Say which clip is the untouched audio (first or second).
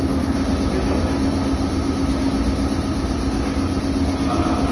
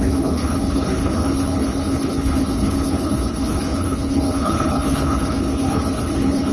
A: first